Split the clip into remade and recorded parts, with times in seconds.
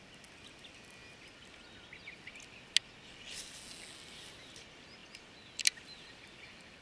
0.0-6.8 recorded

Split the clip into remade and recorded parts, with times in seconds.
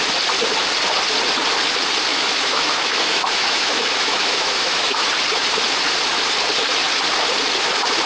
0.0-2.1 recorded; 2.1-5.1 remade; 5.1-8.1 recorded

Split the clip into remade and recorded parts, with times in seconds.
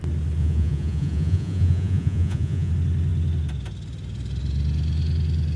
0.0-0.4 recorded; 0.4-2.7 remade; 2.7-5.6 recorded